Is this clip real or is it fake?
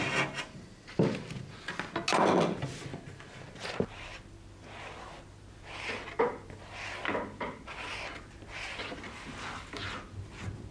real